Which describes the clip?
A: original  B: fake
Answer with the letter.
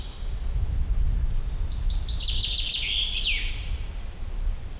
A